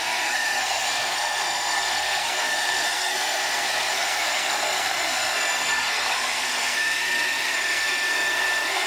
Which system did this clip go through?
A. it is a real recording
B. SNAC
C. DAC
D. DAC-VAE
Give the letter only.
B